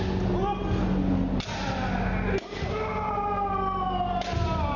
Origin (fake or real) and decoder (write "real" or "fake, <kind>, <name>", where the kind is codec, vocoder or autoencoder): real